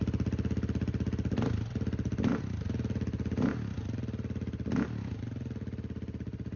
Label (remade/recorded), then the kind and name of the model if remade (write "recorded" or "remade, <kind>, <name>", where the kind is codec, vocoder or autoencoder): recorded